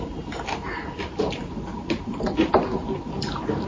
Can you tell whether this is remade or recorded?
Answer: recorded